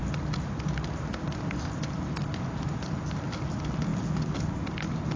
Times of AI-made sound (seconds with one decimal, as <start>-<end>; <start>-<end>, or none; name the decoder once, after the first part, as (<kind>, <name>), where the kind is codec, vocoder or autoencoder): none